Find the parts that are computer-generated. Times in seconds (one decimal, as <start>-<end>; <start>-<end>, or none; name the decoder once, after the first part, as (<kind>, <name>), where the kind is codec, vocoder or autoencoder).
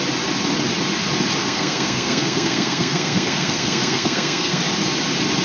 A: 1.4-4.6 (codec, SNAC)